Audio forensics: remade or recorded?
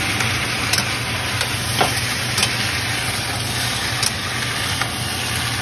recorded